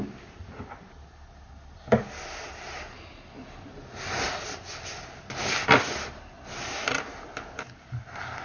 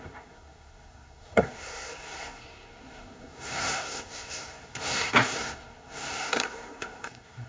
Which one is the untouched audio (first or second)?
first